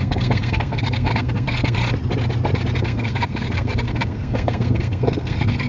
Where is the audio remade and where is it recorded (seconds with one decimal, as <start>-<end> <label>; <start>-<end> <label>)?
0.0-1.8 remade; 1.8-2.8 recorded; 2.8-5.7 remade